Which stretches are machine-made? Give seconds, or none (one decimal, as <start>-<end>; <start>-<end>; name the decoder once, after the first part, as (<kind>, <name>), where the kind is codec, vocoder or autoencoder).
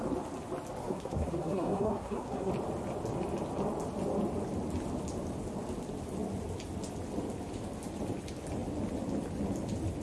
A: 0.8-2.5 (codec, SNAC)